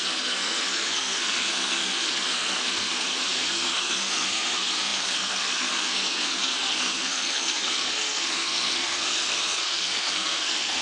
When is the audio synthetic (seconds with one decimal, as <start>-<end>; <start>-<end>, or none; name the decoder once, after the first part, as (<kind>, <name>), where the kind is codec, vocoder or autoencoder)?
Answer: 0.0-10.8 (codec, SNAC)